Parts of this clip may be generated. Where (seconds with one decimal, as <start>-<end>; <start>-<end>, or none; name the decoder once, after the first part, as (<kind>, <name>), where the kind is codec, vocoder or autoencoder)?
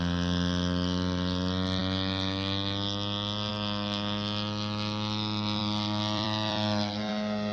5.6-7.1 (vocoder, BigVGAN v2)